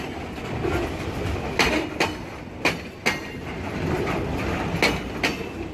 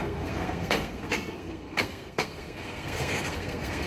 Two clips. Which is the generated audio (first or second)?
second